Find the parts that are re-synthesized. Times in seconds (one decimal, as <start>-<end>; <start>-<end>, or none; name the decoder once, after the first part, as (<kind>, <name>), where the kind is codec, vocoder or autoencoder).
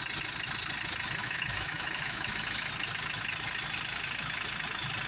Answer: 1.2-2.7 (autoencoder, DAC-VAE)